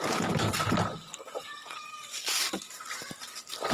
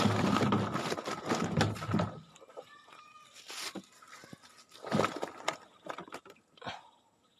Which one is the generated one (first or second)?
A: first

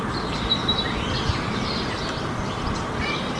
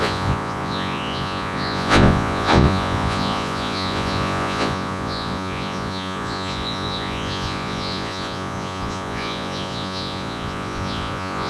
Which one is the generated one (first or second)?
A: second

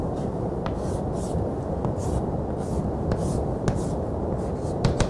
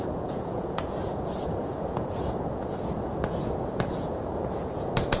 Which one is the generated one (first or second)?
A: second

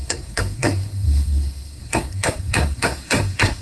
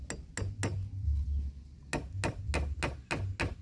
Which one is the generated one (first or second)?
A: first